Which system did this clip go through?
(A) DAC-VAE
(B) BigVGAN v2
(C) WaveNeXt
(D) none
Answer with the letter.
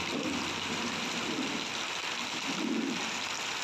D